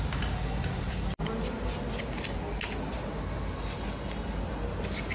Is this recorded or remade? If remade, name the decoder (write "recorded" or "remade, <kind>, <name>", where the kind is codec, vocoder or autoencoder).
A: recorded